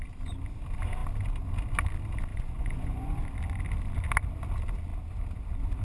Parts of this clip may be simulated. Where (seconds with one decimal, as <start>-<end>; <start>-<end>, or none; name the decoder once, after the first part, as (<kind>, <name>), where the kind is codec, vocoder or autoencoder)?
2.3-3.2 (vocoder, Vocos)